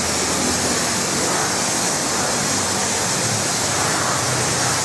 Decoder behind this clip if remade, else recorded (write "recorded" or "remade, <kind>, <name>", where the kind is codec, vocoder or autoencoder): recorded